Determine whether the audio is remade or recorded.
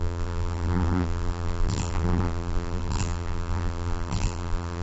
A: remade